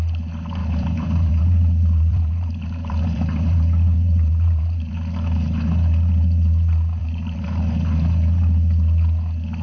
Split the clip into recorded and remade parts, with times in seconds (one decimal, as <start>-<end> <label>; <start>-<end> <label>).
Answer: 0.0-0.6 recorded; 0.6-4.9 remade; 4.9-7.0 recorded; 7.0-7.6 remade; 7.6-9.6 recorded